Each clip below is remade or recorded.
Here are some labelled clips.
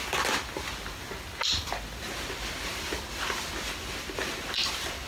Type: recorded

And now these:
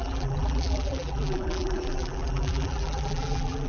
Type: remade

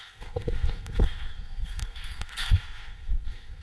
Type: remade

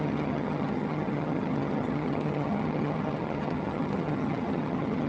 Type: remade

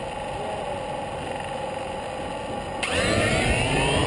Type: recorded